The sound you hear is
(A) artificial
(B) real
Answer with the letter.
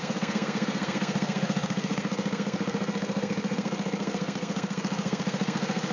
A